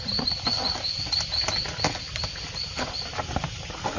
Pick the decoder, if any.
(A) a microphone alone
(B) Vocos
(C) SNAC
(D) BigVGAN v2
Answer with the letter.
A